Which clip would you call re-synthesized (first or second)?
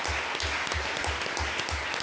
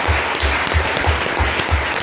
second